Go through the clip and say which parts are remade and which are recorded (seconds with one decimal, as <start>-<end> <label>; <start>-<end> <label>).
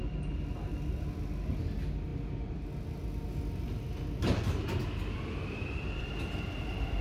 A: 0.0-7.0 recorded